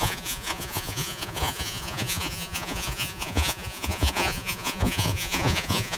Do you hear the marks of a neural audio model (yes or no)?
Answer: yes